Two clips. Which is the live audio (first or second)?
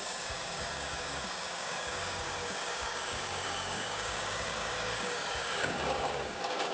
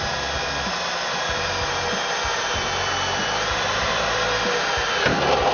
second